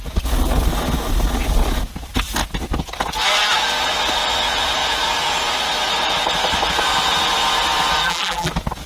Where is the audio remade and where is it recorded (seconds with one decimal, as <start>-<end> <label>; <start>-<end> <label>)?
0.0-8.0 recorded; 8.0-8.5 remade; 8.5-8.9 recorded